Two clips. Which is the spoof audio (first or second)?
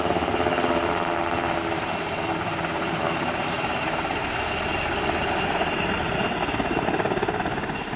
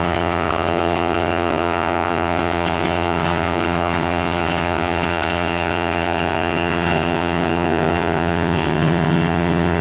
second